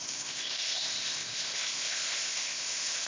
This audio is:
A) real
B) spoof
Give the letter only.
B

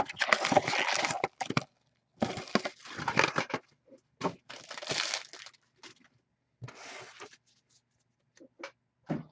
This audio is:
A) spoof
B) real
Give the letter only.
B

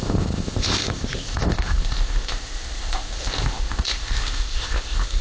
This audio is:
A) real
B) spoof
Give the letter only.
B